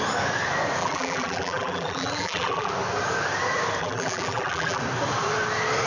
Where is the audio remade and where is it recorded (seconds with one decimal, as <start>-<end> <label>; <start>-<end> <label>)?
0.0-0.8 recorded; 0.8-2.7 remade; 2.7-3.8 recorded; 3.8-4.8 remade; 4.8-5.9 recorded